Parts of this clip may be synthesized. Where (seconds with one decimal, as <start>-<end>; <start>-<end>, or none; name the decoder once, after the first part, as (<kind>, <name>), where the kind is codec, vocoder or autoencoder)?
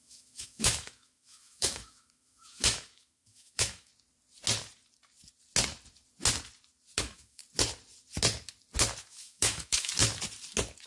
0.0-3.9 (autoencoder, DAC-VAE); 7.0-7.4; 9.0-9.9